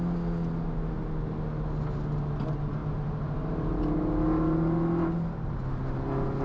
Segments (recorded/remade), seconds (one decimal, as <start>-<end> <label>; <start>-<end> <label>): 0.0-6.4 recorded